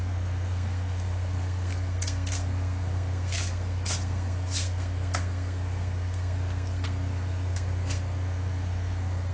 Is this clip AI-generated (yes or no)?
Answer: yes